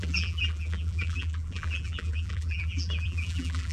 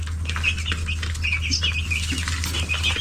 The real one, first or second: second